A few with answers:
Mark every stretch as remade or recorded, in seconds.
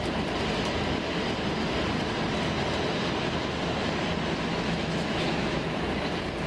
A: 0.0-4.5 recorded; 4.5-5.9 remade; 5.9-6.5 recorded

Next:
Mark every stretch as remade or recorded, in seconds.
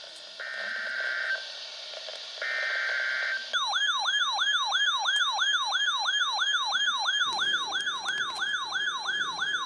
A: 0.0-9.7 recorded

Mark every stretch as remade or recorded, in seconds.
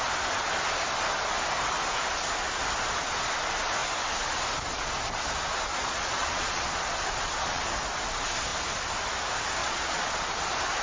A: 0.0-5.7 recorded; 5.7-7.6 remade; 7.6-9.6 recorded; 9.6-10.2 remade; 10.2-10.8 recorded